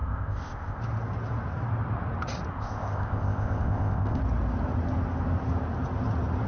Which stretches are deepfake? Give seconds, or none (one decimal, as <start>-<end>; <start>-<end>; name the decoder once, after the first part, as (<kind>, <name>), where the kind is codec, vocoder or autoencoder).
0.0-0.8 (codec, ZipCodec); 2.5-4.2